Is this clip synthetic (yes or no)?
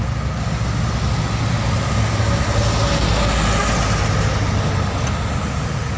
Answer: no